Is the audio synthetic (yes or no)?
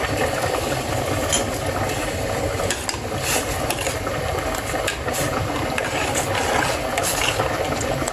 no